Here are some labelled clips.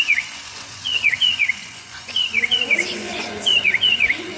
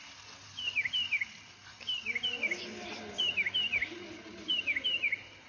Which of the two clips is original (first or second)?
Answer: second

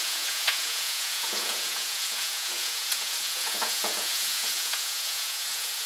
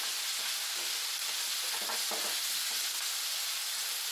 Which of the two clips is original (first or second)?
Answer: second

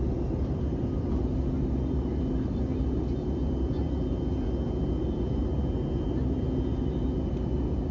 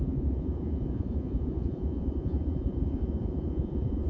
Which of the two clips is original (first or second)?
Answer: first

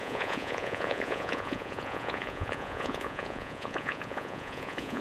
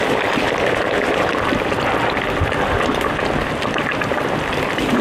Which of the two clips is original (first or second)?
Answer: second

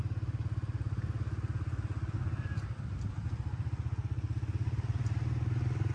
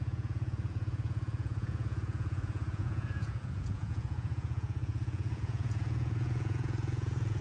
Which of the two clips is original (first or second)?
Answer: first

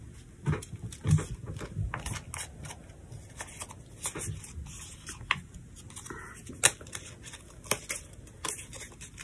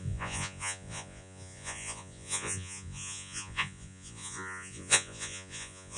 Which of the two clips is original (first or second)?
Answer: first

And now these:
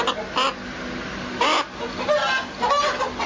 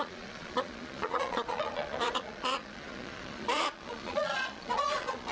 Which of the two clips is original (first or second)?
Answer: first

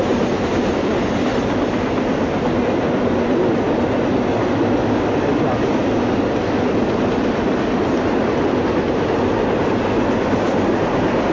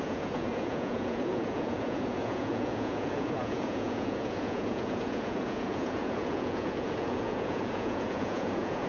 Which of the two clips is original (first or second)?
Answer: first